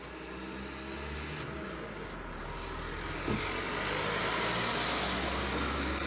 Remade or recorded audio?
recorded